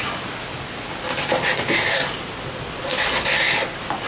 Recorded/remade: recorded